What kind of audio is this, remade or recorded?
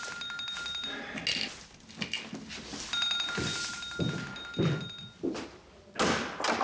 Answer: recorded